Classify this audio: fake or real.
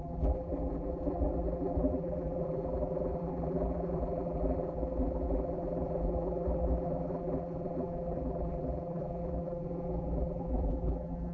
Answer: fake